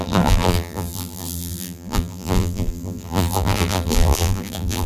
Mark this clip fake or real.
fake